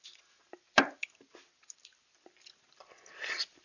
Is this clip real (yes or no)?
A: yes